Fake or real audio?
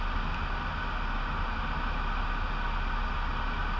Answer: real